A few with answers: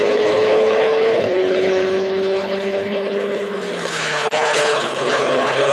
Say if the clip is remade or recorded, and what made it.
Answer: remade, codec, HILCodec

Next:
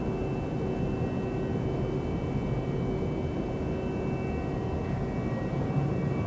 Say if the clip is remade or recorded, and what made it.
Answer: recorded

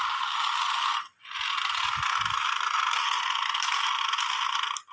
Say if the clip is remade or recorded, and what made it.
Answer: recorded